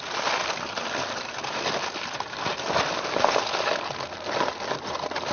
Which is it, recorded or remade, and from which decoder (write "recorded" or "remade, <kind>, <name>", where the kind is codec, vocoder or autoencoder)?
recorded